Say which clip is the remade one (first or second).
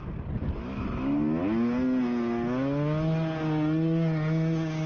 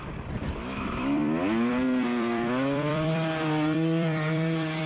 second